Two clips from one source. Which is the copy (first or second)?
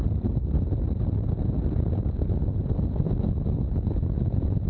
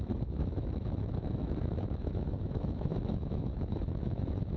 second